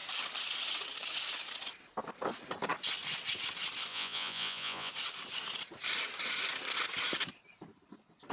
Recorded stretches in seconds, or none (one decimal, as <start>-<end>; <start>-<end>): 0.0-3.9; 4.9-8.3